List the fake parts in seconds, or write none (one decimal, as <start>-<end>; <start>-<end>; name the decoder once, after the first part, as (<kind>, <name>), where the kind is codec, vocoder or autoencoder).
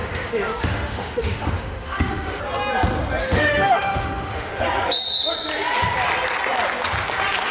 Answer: 0.0-2.4 (autoencoder, DAC-VAE); 3.2-4.6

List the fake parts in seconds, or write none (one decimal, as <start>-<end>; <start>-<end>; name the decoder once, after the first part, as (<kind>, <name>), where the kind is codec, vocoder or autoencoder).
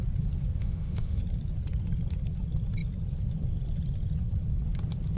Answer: 0.6-1.2 (autoencoder, DAC-VAE)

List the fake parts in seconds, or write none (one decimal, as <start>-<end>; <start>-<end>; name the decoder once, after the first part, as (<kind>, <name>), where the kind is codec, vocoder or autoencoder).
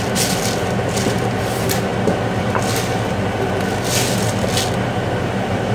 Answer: none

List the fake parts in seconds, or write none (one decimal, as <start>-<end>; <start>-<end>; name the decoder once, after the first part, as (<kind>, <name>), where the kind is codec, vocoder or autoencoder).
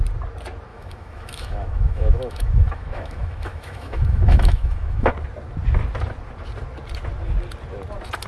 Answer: 0.7-5.1 (autoencoder, DAC-VAE)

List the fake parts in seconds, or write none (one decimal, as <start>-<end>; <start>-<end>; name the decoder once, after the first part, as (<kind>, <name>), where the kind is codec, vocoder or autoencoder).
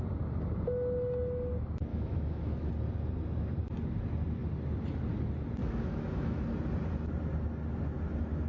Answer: 1.9-2.7 (autoencoder, DAC-VAE); 5.6-6.4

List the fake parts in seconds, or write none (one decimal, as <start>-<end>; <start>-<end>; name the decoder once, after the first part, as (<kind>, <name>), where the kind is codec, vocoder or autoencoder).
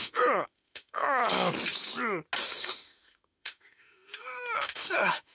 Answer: 0.0-1.2 (autoencoder, DAC-VAE); 2.6-5.3